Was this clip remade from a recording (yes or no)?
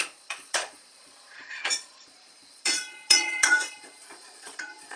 yes